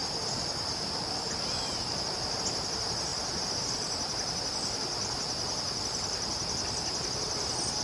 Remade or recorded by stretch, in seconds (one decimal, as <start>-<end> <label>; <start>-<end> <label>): 0.0-7.8 recorded